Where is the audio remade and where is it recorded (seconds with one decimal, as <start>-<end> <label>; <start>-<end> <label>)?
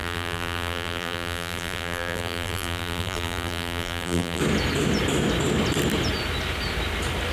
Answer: 0.0-4.4 remade; 4.4-7.3 recorded